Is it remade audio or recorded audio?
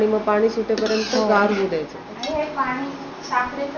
recorded